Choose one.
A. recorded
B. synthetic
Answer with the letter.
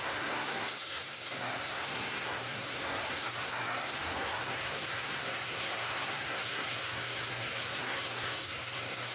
B